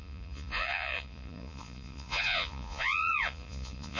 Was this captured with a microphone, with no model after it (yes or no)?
no